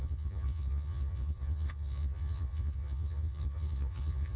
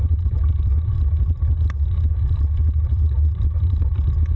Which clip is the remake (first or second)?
first